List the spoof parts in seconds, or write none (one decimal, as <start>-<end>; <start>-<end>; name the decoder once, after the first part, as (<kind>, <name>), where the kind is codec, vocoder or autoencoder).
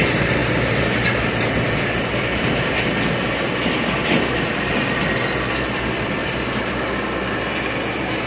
0.4-1.3 (vocoder, BigVGAN v2); 4.0-5.0; 6.2-6.7